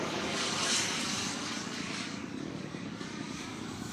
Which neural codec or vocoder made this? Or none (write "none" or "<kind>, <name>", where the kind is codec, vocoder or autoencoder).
codec, DAC